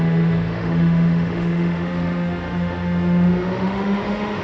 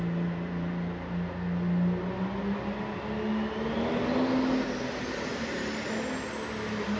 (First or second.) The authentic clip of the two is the second